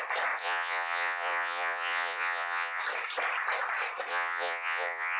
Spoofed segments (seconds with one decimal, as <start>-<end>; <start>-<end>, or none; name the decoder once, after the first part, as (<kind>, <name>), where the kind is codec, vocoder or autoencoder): 0.4-2.8 (vocoder, Vocos); 4.1-5.2